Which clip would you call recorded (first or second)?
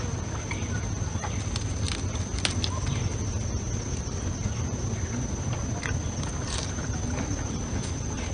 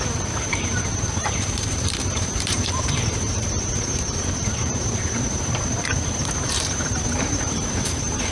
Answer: first